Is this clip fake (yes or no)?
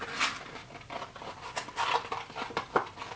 no